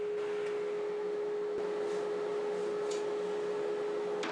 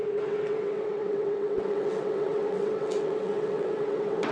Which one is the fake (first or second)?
second